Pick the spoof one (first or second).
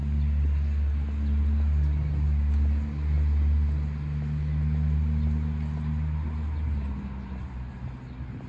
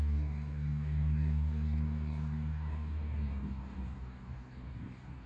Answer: second